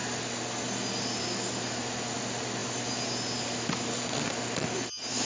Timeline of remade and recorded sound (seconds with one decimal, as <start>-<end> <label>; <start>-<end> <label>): 0.0-5.2 recorded